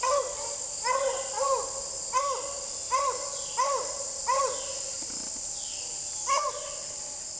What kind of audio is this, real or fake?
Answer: real